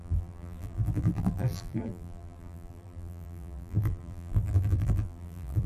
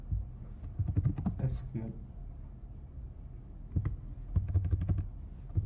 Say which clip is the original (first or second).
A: second